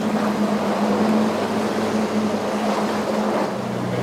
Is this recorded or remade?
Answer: recorded